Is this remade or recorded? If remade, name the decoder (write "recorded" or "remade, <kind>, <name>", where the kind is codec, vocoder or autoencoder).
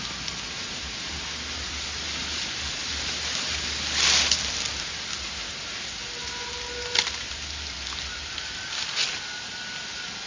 recorded